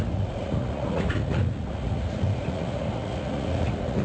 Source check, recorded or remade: remade